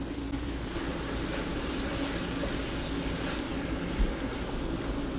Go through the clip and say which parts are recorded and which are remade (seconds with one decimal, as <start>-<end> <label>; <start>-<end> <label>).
0.0-0.9 recorded; 0.9-1.9 remade; 1.9-5.2 recorded